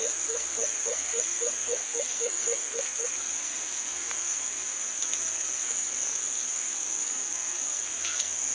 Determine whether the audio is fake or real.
fake